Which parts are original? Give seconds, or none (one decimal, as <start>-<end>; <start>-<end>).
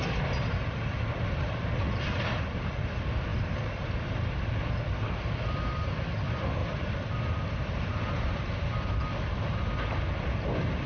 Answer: 0.0-3.3; 3.9-6.6; 7.9-10.9